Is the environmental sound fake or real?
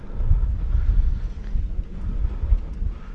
real